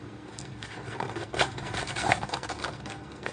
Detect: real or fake fake